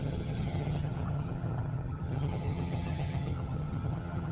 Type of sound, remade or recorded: remade